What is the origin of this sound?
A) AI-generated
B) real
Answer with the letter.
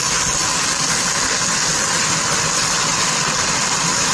B